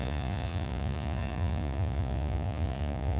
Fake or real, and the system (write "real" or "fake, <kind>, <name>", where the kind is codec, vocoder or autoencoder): fake, vocoder, Vocos